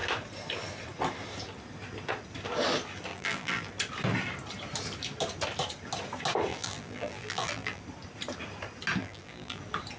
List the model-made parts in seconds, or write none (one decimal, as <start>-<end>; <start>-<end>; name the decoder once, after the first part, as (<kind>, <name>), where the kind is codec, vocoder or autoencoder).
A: 3.1-3.7 (vocoder, BigVGAN v2); 6.5-7.8; 9.0-9.6